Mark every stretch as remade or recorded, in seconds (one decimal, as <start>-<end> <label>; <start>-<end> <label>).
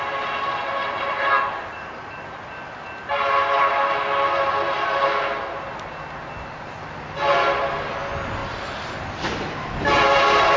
0.0-0.8 recorded; 0.8-2.6 remade; 2.6-8.4 recorded; 8.4-9.0 remade; 9.0-10.6 recorded